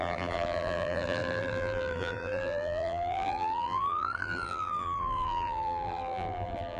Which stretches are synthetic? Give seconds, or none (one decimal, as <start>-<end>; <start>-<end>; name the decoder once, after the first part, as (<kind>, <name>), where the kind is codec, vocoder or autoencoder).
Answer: 0.0-6.8 (vocoder, BigVGAN v2)